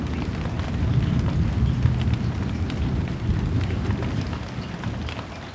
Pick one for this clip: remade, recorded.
recorded